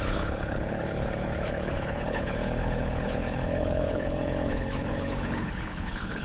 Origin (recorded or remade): remade